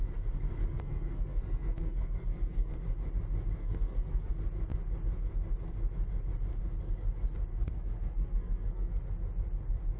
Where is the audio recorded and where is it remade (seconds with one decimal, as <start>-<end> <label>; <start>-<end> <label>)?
0.0-0.6 recorded; 0.6-2.7 remade; 2.7-3.6 recorded; 3.6-4.3 remade; 4.3-7.5 recorded; 7.5-8.9 remade; 8.9-10.0 recorded